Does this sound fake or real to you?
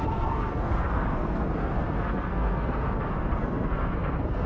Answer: fake